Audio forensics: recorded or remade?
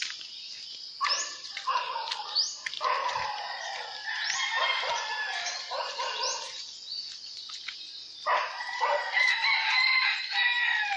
recorded